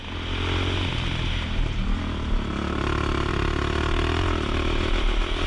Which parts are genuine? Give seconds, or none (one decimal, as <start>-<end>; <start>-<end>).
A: 0.0-5.5